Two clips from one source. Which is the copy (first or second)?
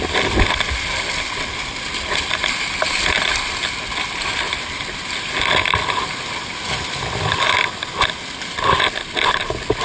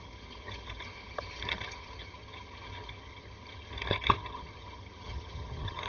second